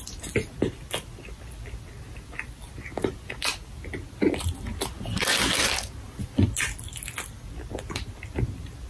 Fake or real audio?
real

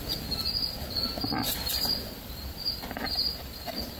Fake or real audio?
real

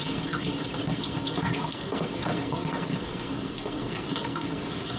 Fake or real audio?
fake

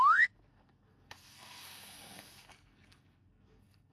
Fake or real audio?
fake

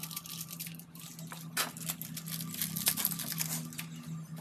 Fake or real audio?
real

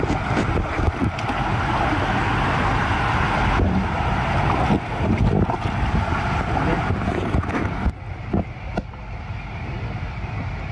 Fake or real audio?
real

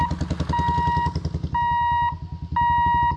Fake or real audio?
real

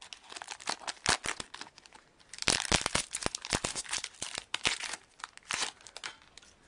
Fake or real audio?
real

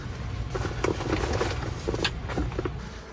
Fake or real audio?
real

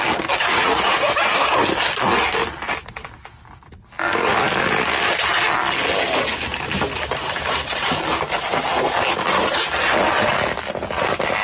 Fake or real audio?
real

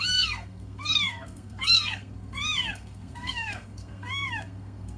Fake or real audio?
fake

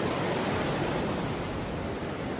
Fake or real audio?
real